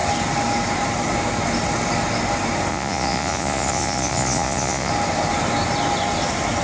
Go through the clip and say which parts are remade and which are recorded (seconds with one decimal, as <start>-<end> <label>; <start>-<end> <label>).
0.0-2.7 recorded; 2.7-4.9 remade; 4.9-6.6 recorded